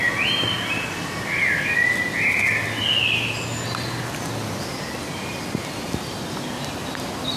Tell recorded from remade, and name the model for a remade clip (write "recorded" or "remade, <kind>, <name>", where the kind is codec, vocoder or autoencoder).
recorded